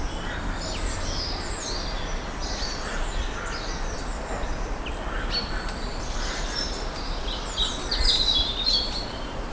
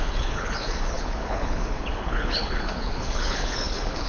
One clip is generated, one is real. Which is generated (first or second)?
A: second